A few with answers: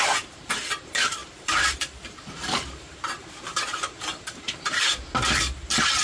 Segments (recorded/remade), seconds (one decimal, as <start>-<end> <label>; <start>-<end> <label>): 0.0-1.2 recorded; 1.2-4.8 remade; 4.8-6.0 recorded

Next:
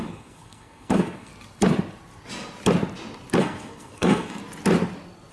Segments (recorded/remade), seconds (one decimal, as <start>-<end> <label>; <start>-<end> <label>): 0.0-1.3 remade; 1.3-3.4 recorded; 3.4-4.4 remade; 4.4-5.3 recorded

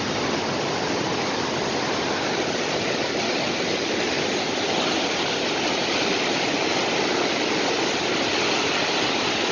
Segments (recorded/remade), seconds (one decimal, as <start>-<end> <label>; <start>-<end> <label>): 0.0-9.5 recorded